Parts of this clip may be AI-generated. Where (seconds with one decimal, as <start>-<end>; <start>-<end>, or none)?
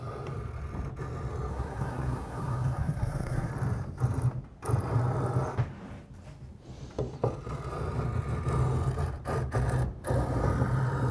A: 1.5-3.5